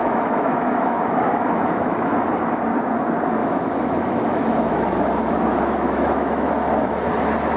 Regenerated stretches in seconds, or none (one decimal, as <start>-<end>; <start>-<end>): 0.0-2.6; 3.4-6.5